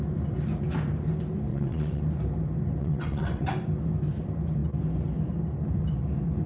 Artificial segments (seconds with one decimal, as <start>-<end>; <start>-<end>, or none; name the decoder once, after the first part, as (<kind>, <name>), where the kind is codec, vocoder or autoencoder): 1.5-2.0 (vocoder, WaveNeXt); 2.8-3.5